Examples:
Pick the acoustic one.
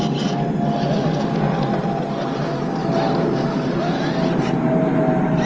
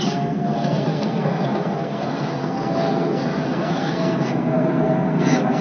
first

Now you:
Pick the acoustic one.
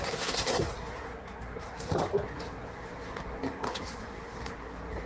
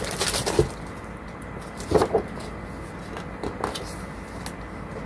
second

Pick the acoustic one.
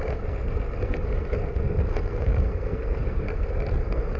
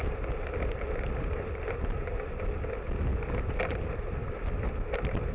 second